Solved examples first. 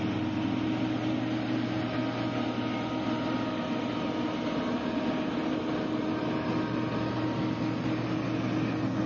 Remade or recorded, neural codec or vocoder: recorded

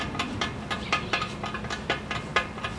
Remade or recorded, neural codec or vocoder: recorded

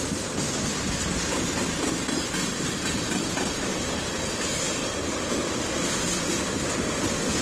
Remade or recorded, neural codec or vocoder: recorded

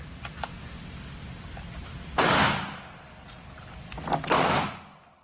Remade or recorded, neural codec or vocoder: recorded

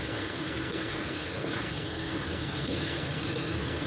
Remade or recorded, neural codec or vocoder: remade, codec, SNAC